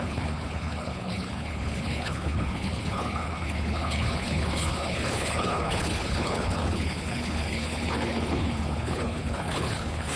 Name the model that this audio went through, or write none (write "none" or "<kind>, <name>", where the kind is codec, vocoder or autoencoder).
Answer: codec, HILCodec